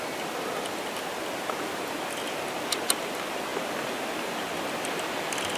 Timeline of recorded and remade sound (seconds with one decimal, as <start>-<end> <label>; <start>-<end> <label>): 0.0-5.6 recorded